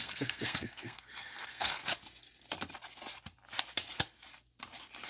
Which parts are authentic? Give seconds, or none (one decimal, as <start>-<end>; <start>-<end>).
1.8-5.1